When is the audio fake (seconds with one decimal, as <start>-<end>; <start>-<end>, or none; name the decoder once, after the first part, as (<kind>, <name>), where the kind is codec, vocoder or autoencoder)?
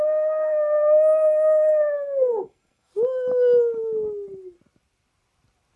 0.0-2.9 (codec, SNAC)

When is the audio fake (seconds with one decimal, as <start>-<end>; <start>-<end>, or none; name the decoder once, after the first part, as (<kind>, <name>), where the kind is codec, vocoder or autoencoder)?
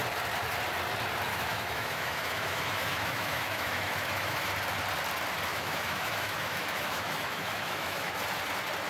1.3-4.5 (autoencoder, DAC-VAE); 5.5-8.1